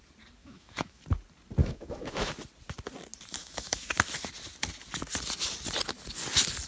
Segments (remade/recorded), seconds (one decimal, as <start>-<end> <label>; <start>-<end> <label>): 0.0-0.4 recorded; 0.4-1.0 remade; 1.0-1.6 recorded; 1.6-2.3 remade; 2.3-3.4 recorded; 3.4-3.9 remade; 3.9-6.7 recorded